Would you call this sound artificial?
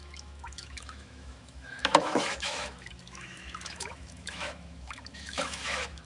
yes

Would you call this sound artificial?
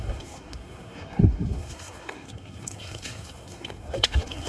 yes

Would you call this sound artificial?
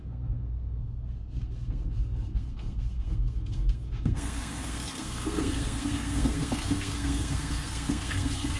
yes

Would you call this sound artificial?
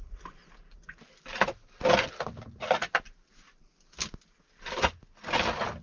no